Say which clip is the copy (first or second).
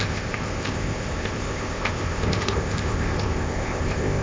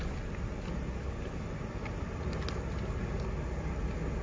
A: first